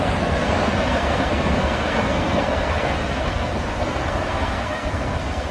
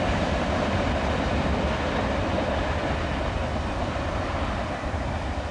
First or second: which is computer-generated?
first